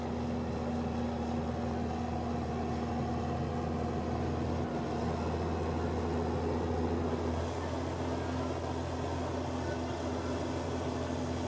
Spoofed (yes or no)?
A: no